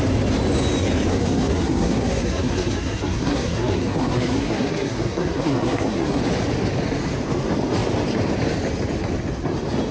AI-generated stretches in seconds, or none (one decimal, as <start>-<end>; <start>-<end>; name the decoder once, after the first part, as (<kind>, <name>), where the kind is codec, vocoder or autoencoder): 1.1-6.2 (codec, SNAC)